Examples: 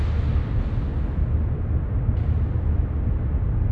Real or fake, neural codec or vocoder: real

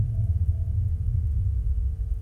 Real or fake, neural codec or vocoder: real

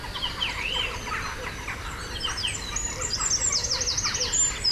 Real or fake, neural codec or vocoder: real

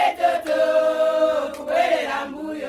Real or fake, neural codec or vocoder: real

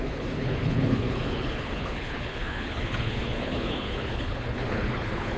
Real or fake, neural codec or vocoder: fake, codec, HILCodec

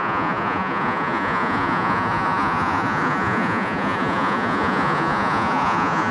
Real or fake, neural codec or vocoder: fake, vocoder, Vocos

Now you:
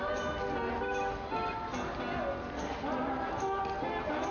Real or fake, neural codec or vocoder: real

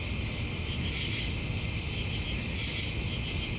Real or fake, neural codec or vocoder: real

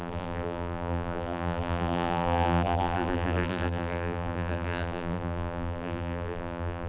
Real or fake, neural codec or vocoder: fake, vocoder, BigVGAN v2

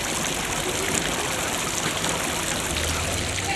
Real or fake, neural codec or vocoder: real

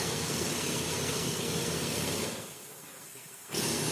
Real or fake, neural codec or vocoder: fake, codec, SNAC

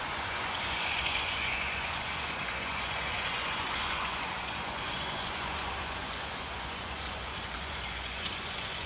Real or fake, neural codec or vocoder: fake, vocoder, Vocos